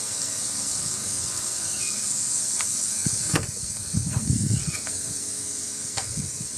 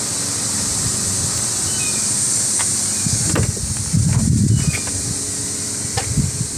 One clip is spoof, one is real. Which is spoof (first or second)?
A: first